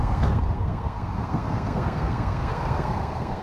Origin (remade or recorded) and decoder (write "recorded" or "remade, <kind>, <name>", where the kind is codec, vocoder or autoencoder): remade, codec, SNAC